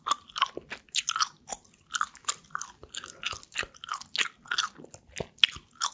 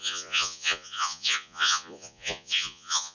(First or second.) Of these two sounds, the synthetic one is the second